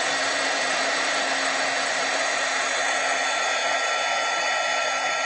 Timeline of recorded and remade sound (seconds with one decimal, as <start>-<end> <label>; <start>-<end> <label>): 0.0-3.6 remade; 3.6-5.3 recorded